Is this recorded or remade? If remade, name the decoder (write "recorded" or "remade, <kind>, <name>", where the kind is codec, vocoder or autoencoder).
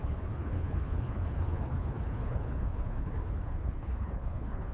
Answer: remade, codec, HILCodec